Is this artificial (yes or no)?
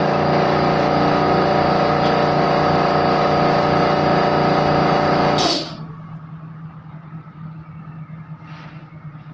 no